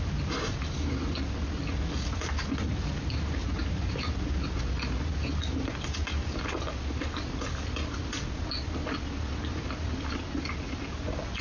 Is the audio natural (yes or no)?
yes